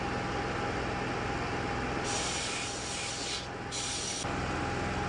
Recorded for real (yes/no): yes